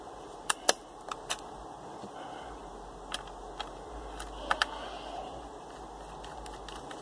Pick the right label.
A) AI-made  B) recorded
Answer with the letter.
B